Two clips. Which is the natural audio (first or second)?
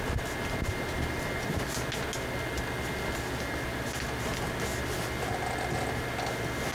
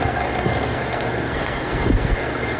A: first